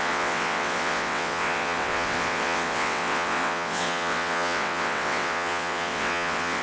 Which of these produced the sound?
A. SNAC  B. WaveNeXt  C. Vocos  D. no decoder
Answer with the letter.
B